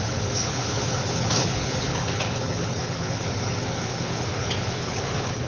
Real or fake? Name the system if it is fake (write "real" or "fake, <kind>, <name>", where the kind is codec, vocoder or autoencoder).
fake, codec, HILCodec